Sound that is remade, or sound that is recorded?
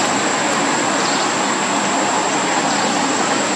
recorded